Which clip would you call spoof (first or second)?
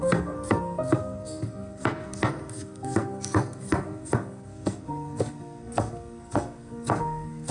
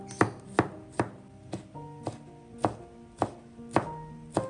first